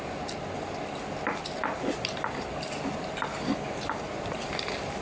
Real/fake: real